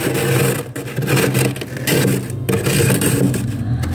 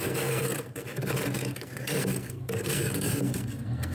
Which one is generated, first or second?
second